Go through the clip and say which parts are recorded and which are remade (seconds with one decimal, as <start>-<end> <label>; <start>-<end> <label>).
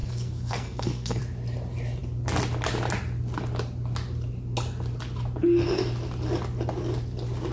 0.0-1.2 remade; 1.2-7.5 recorded